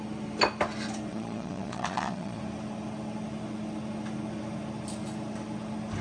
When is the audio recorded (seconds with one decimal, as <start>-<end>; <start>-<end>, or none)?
0.0-1.1; 2.4-6.0